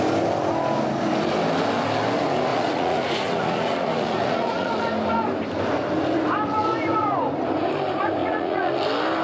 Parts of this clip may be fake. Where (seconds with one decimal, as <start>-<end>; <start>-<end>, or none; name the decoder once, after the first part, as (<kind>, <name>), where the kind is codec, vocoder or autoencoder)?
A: 2.5-4.7 (vocoder, Vocos); 8.2-8.7